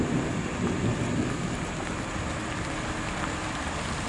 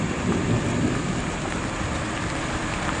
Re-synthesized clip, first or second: second